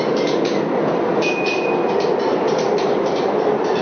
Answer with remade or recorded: recorded